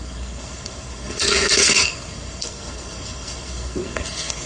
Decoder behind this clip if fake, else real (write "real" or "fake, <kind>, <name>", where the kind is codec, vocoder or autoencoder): fake, codec, SNAC